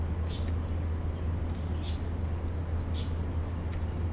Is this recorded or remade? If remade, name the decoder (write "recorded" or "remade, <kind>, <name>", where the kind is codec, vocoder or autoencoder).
recorded